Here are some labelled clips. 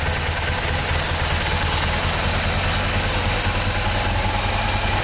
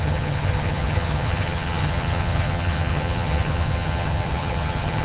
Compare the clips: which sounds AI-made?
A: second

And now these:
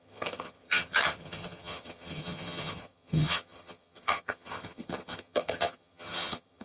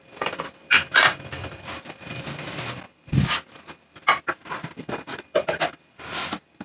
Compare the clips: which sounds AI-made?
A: first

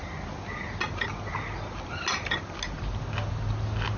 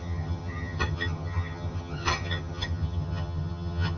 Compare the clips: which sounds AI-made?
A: second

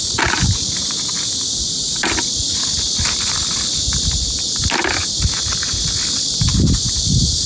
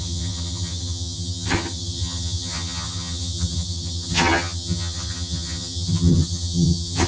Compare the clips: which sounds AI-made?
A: second